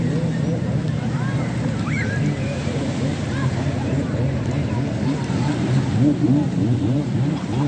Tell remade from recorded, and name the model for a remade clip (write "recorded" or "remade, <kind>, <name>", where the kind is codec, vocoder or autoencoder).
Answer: remade, vocoder, BigVGAN v2